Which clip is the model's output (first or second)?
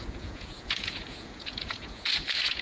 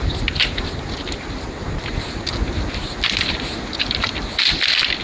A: first